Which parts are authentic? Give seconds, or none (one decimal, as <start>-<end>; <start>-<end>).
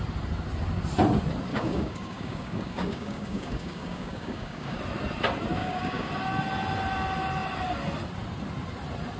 0.0-1.5; 4.8-5.6; 6.1-9.2